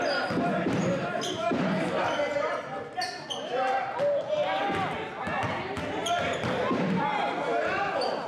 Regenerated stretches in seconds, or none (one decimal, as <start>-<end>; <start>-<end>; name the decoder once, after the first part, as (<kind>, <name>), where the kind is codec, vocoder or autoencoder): none